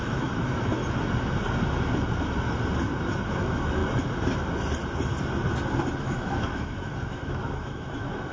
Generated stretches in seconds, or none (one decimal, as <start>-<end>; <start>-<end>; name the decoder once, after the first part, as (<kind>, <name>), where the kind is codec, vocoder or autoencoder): 0.0-0.8 (autoencoder, DAC-VAE); 3.3-3.8; 6.0-8.3